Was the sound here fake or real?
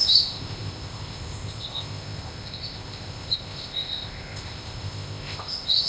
fake